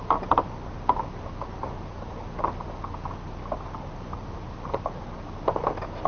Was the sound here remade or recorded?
recorded